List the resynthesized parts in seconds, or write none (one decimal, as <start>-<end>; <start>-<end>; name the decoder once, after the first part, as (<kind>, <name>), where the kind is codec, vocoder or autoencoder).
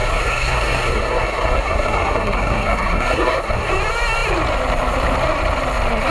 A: 0.0-3.7 (codec, SNAC)